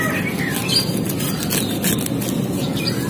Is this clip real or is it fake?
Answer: real